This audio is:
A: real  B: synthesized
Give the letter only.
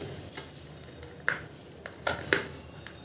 A